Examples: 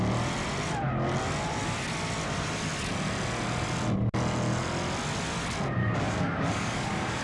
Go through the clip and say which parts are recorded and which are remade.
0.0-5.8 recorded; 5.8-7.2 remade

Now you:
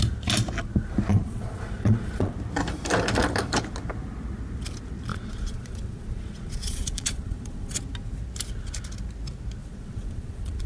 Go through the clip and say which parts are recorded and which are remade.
0.0-1.1 recorded; 1.1-2.3 remade; 2.3-5.1 recorded; 5.1-7.8 remade; 7.8-9.6 recorded; 9.6-10.7 remade

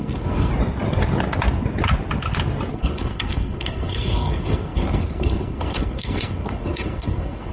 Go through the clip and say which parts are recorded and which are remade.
0.0-0.5 remade; 0.5-2.7 recorded; 2.7-7.5 remade

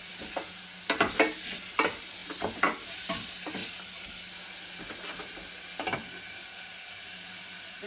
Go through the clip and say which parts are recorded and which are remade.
0.0-7.9 recorded